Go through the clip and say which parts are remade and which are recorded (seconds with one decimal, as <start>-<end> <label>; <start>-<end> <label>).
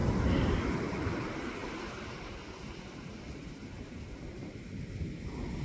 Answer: 0.0-5.6 recorded